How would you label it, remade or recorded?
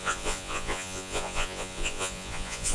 remade